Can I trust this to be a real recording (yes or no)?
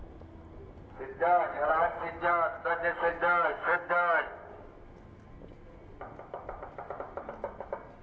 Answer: yes